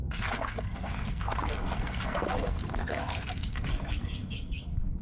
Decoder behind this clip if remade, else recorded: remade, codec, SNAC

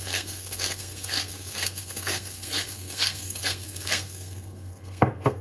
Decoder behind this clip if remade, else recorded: remade, codec, SNAC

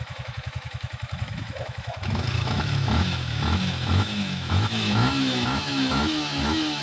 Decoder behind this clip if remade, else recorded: remade, autoencoder, DAC-VAE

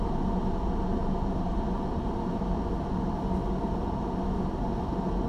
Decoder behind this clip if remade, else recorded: recorded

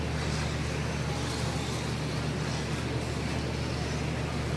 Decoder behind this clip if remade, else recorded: recorded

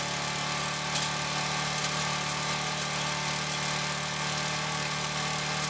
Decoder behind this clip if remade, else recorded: recorded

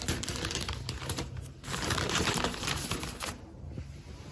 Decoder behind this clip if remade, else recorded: remade, vocoder, BigVGAN v2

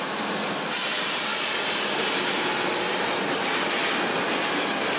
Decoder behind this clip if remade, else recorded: recorded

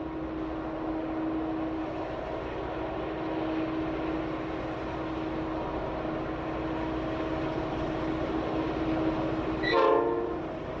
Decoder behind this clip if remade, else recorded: recorded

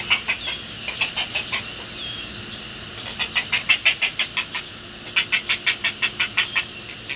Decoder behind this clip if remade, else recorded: recorded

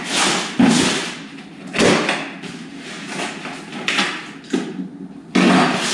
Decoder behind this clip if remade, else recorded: recorded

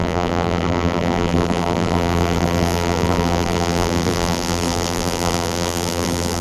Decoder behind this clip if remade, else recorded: remade, vocoder, BigVGAN v2